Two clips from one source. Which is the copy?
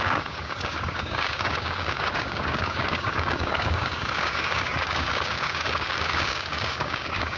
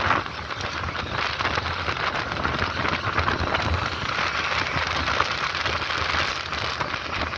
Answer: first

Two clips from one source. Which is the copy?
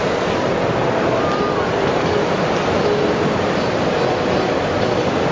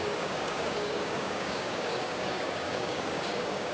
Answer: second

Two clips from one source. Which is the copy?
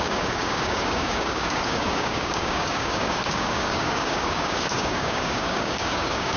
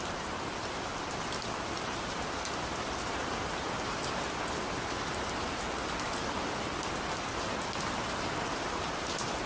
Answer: first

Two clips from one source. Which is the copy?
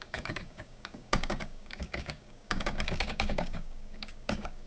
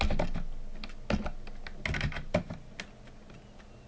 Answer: first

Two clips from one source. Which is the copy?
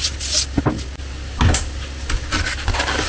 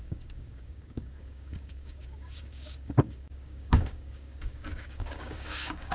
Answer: second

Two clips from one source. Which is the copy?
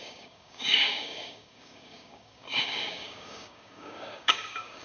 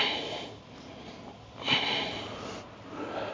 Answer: first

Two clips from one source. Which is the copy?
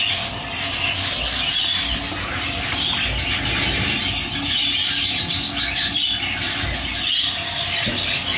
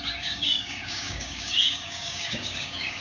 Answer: second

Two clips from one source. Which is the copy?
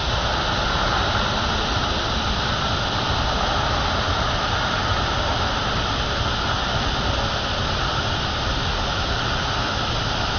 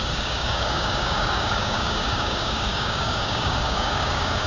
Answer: second